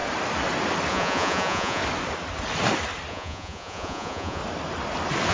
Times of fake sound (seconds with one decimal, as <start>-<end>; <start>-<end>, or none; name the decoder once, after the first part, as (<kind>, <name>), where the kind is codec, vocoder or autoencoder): 0.9-1.8 (vocoder, Vocos); 3.1-4.4